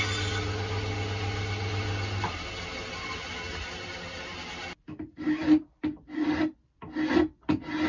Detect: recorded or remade recorded